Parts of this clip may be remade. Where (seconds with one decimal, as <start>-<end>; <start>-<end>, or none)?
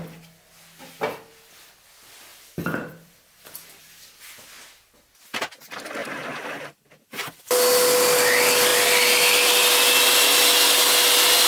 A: 2.3-4.2; 6.0-7.4